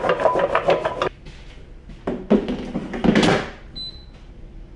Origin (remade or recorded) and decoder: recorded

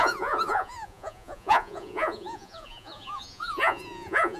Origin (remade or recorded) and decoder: remade, vocoder, Vocos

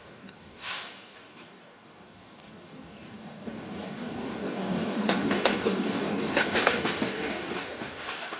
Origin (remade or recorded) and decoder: remade, codec, DAC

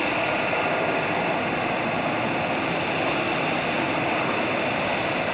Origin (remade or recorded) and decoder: recorded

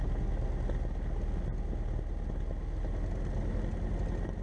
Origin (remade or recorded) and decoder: recorded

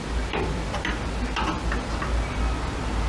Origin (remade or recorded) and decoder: recorded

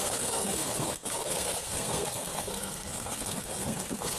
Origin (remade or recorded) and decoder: remade, codec, SNAC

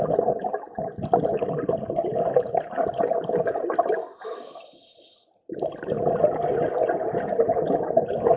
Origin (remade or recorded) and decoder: recorded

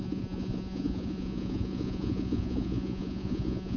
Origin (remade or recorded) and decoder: remade, vocoder, Vocos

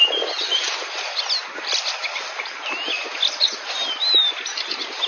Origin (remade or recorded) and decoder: recorded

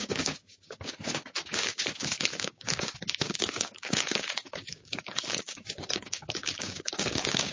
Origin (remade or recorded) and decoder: remade, codec, DAC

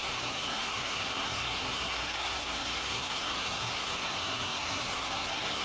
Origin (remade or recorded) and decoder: remade, codec, SNAC